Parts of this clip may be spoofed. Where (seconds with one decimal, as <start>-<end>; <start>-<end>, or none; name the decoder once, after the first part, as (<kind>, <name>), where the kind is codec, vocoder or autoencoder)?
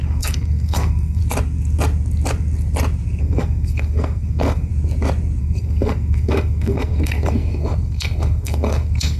0.0-1.2 (codec, SNAC); 3.2-4.7; 5.4-9.2